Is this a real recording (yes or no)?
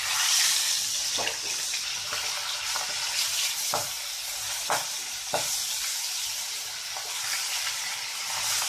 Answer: yes